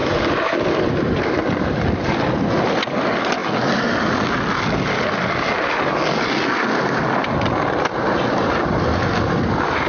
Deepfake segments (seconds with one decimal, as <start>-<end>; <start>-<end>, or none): 0.0-2.5; 8.9-9.9